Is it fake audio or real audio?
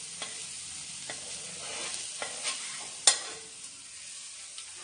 real